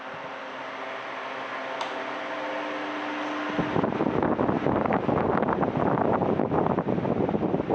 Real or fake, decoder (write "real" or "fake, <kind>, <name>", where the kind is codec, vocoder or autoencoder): real